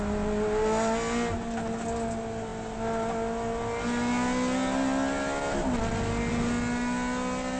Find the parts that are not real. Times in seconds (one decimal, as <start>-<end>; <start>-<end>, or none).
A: none